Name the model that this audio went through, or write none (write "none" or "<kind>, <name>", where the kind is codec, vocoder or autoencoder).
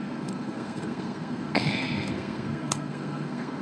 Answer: codec, SNAC